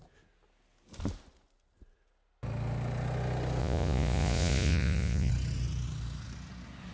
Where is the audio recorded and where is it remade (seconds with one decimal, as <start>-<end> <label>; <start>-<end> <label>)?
0.0-3.6 recorded; 3.6-5.3 remade; 5.3-6.9 recorded